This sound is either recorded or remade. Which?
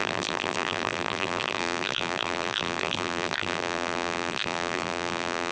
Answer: remade